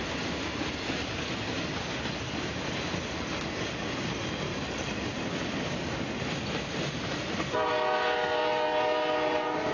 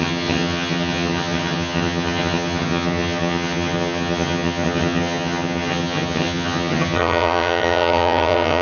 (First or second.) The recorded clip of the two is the first